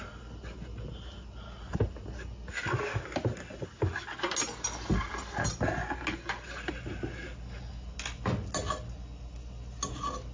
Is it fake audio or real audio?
real